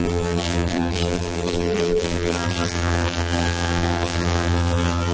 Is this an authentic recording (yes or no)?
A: no